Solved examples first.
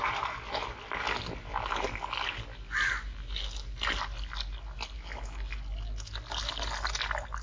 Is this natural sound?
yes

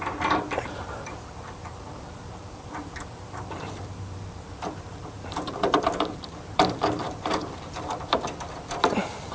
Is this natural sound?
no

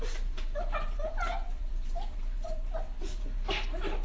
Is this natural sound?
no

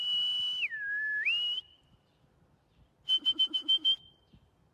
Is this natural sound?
yes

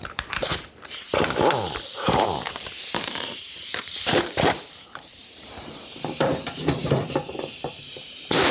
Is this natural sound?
no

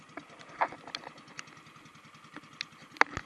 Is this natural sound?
yes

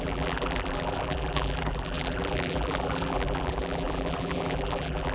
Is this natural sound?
no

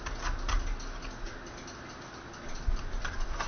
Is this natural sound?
yes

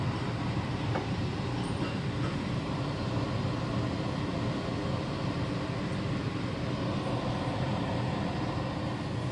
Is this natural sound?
yes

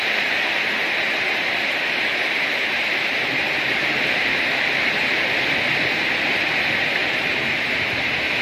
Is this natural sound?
no